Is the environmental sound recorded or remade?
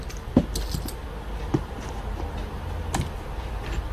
recorded